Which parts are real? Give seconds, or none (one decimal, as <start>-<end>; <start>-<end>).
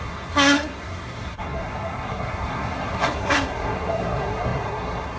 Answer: none